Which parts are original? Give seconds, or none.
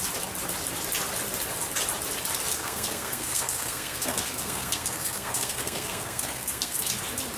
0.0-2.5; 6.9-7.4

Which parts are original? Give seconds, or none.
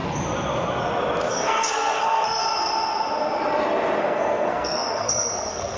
0.0-1.3; 2.4-4.0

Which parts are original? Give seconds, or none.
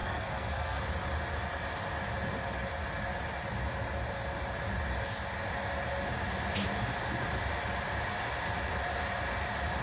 0.8-9.8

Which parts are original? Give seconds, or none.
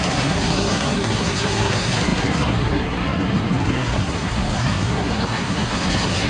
none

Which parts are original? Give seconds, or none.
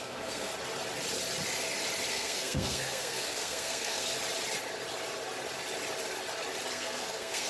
0.5-2.1; 4.1-6.7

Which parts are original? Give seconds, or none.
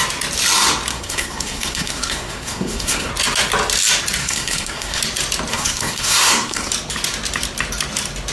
0.0-0.9; 3.1-4.2; 5.0-5.5; 6.7-8.3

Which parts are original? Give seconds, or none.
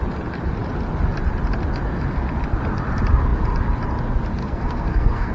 0.0-4.4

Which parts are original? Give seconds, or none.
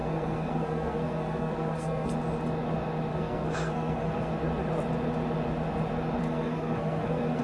2.1-3.1; 4.3-6.2